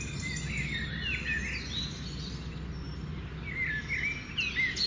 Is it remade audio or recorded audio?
recorded